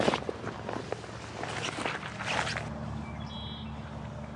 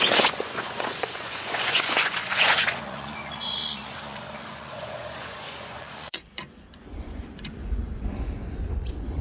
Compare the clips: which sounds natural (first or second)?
first